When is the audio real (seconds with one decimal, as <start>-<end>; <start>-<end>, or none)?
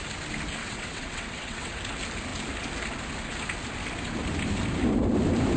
0.0-0.6; 1.7-5.6